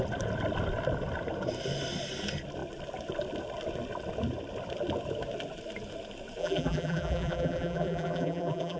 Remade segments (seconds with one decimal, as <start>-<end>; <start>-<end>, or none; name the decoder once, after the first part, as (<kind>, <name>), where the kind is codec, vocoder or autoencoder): 6.4-8.8 (vocoder, BigVGAN v2)